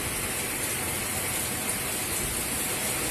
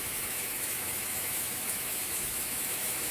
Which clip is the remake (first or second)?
second